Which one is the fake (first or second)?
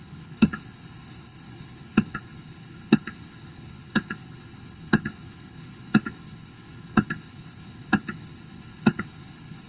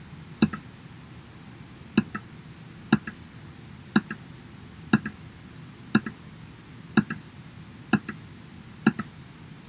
first